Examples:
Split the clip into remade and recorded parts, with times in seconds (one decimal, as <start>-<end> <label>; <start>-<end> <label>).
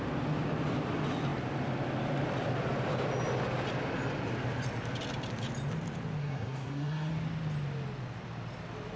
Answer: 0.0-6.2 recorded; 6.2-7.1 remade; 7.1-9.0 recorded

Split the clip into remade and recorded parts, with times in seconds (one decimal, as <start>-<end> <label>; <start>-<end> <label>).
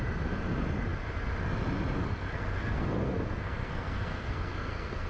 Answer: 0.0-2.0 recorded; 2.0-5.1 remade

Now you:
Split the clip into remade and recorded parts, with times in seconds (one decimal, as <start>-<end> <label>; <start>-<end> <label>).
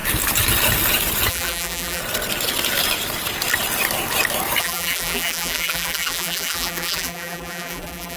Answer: 0.0-1.3 recorded; 1.3-2.0 remade; 2.0-4.6 recorded; 4.6-8.2 remade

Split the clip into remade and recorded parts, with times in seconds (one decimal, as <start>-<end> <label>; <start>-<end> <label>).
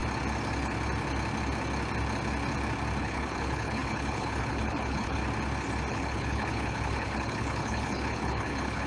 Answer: 0.0-3.0 recorded; 3.0-5.2 remade; 5.2-5.9 recorded; 5.9-8.9 remade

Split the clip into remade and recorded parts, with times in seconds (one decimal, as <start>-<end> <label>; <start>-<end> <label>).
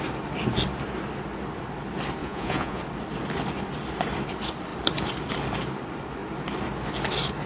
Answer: 0.0-2.2 recorded; 2.2-2.8 remade; 2.8-7.5 recorded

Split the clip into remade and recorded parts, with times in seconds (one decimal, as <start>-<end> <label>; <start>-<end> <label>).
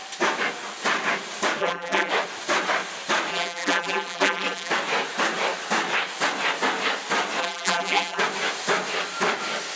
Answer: 0.0-1.6 recorded; 1.6-2.1 remade; 2.1-3.3 recorded; 3.3-4.7 remade; 4.7-7.4 recorded; 7.4-8.2 remade; 8.2-9.8 recorded